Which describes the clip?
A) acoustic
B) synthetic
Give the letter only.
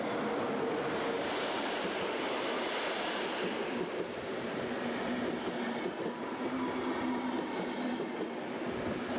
A